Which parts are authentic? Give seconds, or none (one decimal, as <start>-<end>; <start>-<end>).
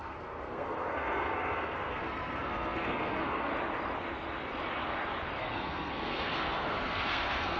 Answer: 3.5-5.4